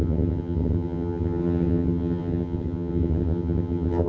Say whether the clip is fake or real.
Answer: fake